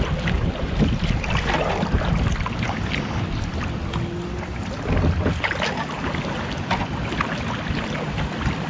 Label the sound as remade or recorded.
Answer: recorded